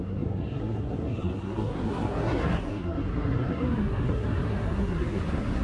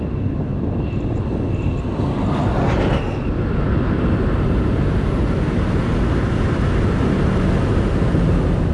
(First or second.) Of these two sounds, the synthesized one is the first